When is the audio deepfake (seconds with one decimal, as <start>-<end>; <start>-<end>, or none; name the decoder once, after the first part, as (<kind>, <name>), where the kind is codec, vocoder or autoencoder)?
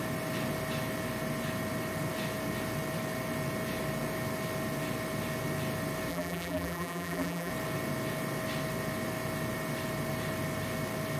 6.1-7.5 (vocoder, BigVGAN v2)